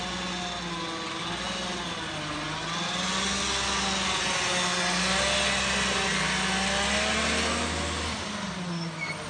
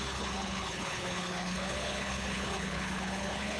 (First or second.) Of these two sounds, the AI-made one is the second